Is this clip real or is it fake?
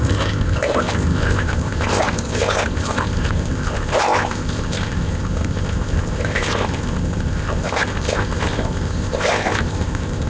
fake